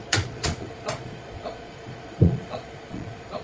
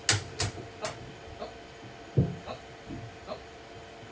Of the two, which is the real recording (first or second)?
second